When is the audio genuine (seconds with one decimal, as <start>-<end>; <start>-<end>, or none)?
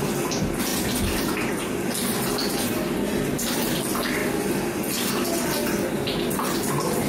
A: 0.0-0.7; 1.8-7.1